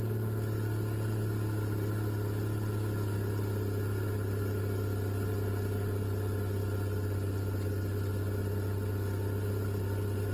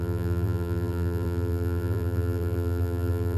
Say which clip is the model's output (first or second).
second